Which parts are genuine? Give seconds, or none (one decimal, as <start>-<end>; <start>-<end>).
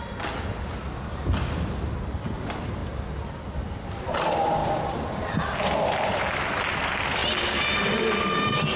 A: 0.0-8.8